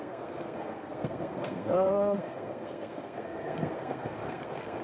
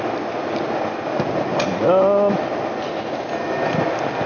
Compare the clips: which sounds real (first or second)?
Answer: second